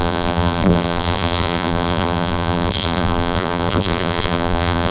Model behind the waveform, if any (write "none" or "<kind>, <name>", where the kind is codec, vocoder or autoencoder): vocoder, BigVGAN v2